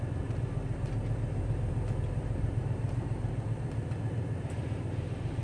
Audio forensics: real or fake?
fake